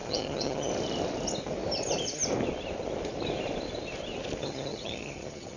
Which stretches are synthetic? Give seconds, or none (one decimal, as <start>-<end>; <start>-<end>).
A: 0.0-0.7; 4.4-5.6

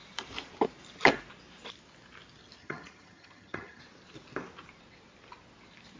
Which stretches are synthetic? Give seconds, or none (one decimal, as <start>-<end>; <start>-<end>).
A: 2.6-3.8